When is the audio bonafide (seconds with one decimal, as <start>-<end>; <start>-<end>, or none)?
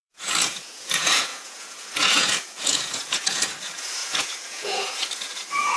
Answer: none